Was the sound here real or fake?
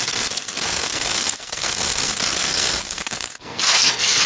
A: fake